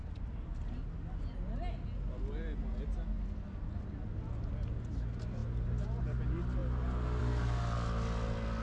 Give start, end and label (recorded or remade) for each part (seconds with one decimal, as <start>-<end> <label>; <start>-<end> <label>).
0.0-8.6 recorded